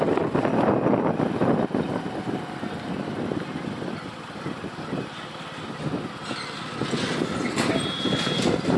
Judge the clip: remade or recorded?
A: recorded